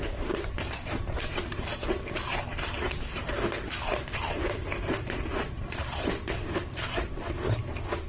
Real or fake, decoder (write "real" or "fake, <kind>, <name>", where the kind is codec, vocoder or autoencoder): fake, vocoder, BigVGAN v2